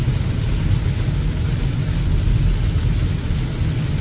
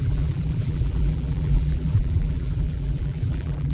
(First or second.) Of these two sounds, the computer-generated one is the second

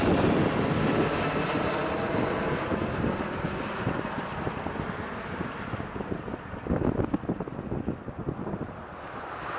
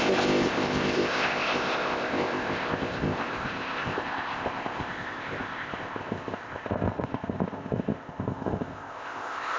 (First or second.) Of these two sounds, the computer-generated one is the second